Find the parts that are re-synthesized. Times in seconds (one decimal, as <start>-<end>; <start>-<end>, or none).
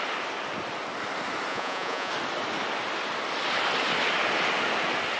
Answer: 1.5-2.1